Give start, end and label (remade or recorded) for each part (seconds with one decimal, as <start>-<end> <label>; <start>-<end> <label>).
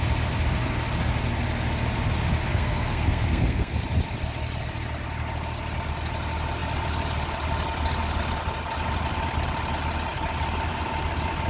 0.0-2.5 recorded; 2.5-3.8 remade; 3.8-11.5 recorded